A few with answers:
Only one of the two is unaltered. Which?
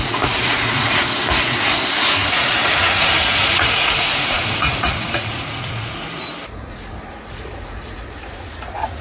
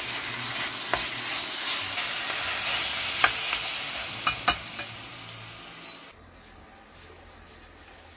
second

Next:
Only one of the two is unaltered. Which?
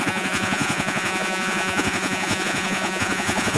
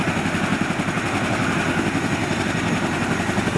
second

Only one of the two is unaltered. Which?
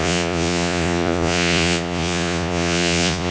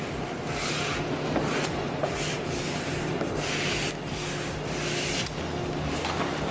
second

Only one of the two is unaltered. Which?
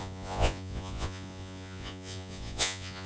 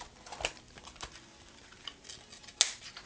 second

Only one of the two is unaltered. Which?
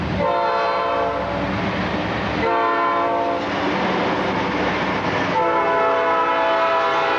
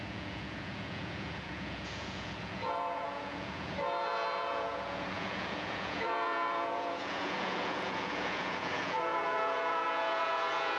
first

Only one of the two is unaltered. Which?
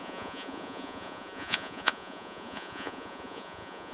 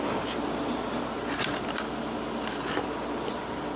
second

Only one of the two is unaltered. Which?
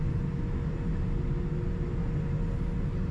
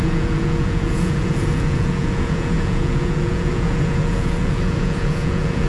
first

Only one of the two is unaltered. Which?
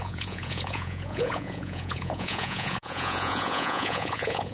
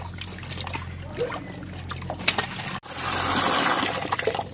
second